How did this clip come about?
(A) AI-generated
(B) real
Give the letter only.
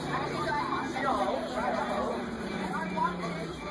A